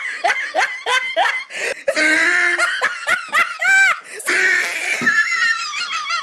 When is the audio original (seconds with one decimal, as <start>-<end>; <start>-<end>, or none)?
0.0-3.1; 3.6-4.1; 5.0-6.2